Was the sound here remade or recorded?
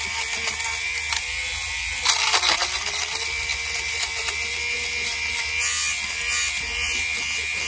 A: remade